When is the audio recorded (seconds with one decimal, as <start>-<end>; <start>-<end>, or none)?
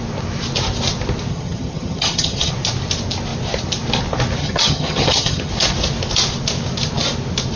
0.0-1.3; 2.5-4.4; 5.5-7.6